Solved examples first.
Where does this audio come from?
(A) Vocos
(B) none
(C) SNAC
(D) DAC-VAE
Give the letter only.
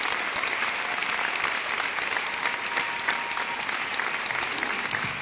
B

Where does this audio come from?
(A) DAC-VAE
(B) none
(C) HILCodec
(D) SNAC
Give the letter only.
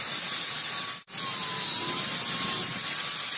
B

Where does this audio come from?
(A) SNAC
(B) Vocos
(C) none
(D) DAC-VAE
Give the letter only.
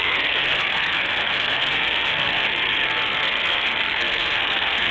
A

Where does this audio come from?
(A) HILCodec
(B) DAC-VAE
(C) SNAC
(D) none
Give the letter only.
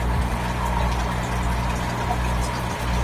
D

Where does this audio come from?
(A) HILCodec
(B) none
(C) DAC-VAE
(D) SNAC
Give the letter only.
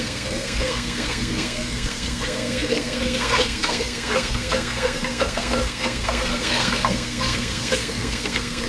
D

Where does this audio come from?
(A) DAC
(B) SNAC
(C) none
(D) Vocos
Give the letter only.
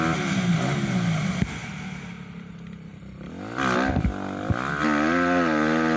C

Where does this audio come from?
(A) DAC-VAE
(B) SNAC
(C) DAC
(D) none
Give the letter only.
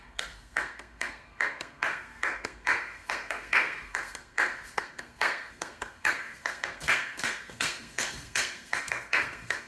B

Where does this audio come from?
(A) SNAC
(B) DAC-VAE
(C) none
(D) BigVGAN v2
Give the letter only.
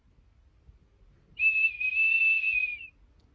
C